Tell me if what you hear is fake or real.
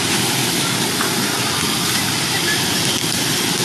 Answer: real